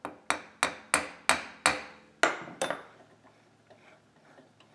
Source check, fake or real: real